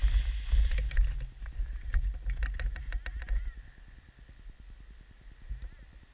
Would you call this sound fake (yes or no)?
no